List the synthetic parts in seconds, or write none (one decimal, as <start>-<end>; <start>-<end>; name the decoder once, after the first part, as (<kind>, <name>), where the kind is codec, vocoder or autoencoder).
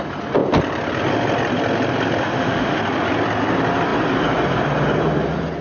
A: 2.2-2.8 (autoencoder, DAC-VAE)